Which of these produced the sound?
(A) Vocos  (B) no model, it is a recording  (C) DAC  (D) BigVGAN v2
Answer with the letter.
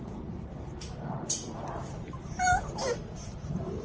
D